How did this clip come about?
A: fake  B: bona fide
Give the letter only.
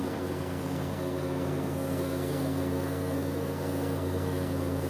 A